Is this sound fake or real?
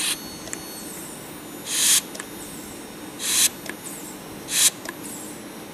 real